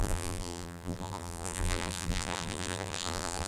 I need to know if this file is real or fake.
fake